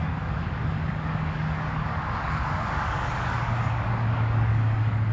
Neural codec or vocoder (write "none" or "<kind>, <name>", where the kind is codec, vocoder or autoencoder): codec, DAC